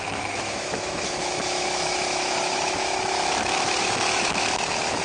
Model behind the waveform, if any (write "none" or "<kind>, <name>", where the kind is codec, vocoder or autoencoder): autoencoder, DAC-VAE